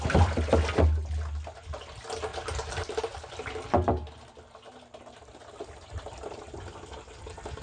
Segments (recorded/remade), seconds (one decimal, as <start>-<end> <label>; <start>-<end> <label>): 0.0-2.3 recorded; 2.3-3.3 remade; 3.3-7.6 recorded